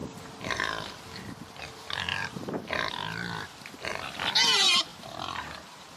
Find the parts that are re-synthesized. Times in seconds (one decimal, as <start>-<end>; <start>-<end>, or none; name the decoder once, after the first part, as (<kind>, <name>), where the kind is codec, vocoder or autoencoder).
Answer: 0.0-0.7 (vocoder, BigVGAN v2); 2.1-2.9; 4.9-6.0